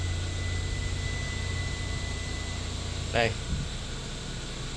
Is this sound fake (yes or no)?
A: no